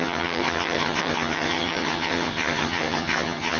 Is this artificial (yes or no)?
yes